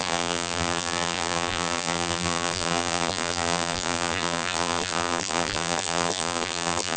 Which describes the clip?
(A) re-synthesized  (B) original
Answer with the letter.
A